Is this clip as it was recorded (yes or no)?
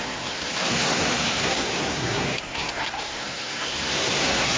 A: no